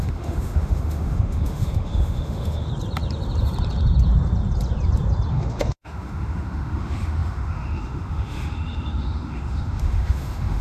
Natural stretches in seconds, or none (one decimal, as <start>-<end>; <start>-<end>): 2.7-5.3